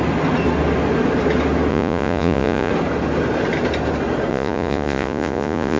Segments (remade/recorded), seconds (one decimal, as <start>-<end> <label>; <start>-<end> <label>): 0.0-1.7 recorded; 1.7-2.7 remade; 2.7-4.3 recorded; 4.3-5.8 remade